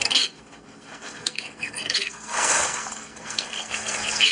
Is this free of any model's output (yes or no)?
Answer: no